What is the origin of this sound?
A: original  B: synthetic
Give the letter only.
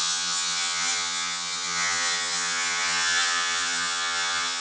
B